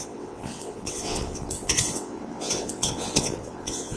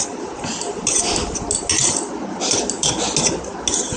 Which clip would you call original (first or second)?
second